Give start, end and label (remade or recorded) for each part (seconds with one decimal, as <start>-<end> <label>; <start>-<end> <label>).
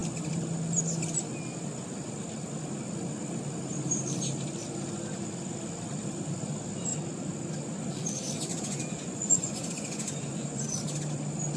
0.0-8.5 recorded; 8.5-10.6 remade; 10.6-11.6 recorded